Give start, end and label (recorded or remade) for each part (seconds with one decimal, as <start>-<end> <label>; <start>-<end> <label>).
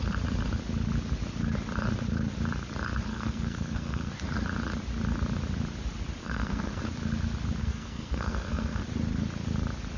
0.0-3.1 recorded; 3.1-4.1 remade; 4.1-6.2 recorded; 6.2-6.8 remade; 6.8-7.6 recorded; 7.6-8.8 remade; 8.8-10.0 recorded